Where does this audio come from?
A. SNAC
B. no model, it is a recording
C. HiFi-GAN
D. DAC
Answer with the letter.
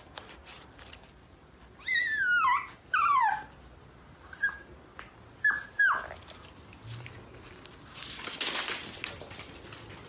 B